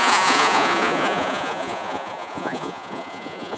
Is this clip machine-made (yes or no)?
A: yes